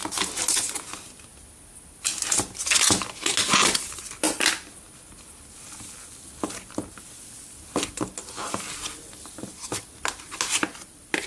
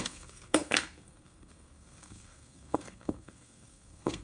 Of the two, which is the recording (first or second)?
first